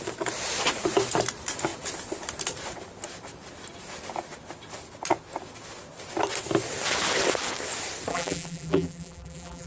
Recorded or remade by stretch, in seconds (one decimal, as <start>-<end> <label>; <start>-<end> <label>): 0.0-8.1 recorded; 8.1-9.7 remade